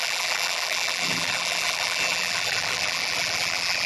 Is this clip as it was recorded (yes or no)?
no